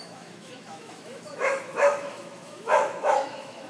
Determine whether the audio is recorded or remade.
remade